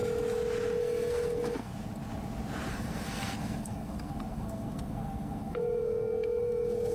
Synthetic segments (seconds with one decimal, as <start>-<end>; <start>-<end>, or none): 0.8-1.7; 2.7-6.9